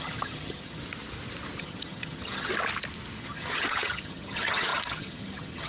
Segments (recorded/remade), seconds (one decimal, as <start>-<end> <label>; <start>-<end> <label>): 0.0-0.8 remade; 0.8-1.6 recorded; 1.6-2.5 remade; 2.5-3.2 recorded; 3.2-5.7 remade